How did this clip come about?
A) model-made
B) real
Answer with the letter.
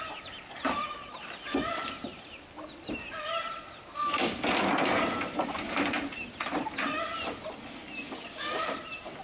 A